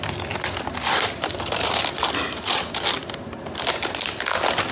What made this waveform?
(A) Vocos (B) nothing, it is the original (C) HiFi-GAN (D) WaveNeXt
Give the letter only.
B